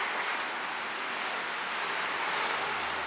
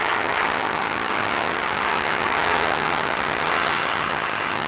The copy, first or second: second